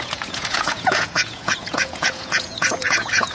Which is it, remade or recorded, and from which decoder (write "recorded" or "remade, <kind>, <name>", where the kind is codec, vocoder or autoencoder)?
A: remade, vocoder, Vocos